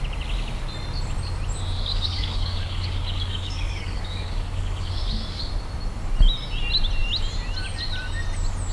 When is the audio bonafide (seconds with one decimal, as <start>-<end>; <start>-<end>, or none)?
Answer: 0.0-1.9; 5.5-8.7